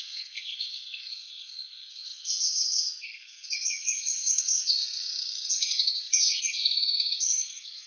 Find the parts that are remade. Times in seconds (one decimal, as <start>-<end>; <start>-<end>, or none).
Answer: 0.0-7.9